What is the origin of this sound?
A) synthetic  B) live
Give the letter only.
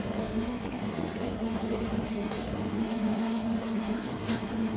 A